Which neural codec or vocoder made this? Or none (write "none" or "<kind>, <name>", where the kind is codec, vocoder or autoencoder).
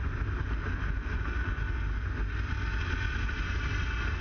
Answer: none